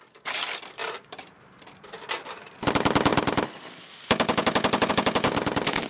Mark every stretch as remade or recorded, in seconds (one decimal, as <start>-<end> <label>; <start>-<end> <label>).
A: 0.0-0.8 recorded; 0.8-2.7 remade; 2.7-5.9 recorded